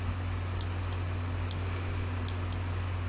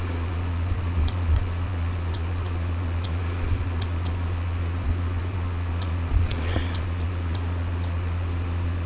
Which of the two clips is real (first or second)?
first